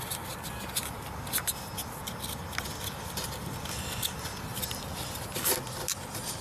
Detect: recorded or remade recorded